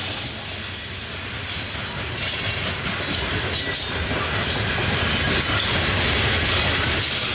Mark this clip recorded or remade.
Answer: recorded